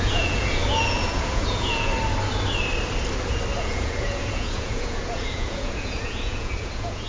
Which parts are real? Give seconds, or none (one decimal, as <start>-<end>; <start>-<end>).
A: 1.9-3.6